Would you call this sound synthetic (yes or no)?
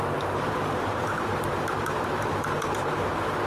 yes